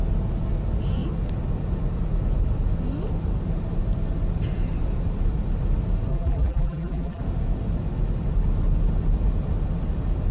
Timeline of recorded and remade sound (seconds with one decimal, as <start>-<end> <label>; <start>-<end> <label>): 0.0-6.1 recorded; 6.1-7.2 remade; 7.2-10.3 recorded